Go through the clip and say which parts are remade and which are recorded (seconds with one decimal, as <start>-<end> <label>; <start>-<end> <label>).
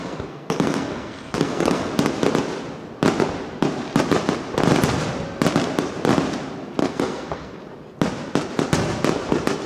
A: 0.0-1.9 remade; 1.9-6.8 recorded; 6.8-7.6 remade; 7.6-9.7 recorded